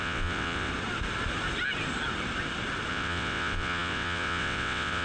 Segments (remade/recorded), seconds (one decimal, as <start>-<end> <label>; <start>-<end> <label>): 0.0-0.7 remade; 0.7-2.9 recorded; 2.9-5.0 remade

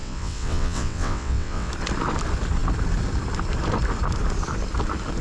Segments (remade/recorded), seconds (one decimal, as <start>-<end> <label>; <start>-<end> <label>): 0.0-1.7 remade; 1.7-5.2 recorded

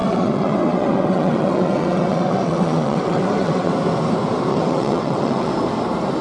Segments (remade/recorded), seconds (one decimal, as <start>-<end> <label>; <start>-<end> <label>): 0.0-3.7 remade; 3.7-4.5 recorded; 4.5-5.5 remade; 5.5-6.2 recorded